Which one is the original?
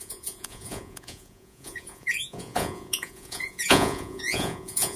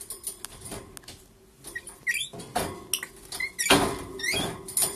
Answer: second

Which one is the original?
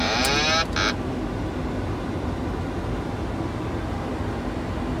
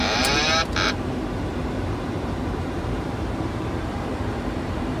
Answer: first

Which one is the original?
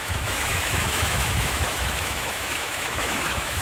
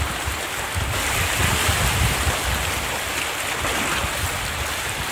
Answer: second